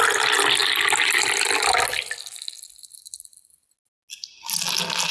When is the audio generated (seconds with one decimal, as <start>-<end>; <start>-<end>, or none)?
none